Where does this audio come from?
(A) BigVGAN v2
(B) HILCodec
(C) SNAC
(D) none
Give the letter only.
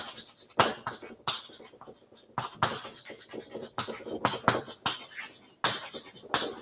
D